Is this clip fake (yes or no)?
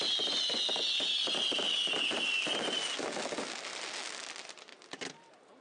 no